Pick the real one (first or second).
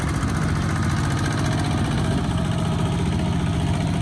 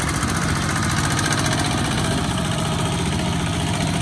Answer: first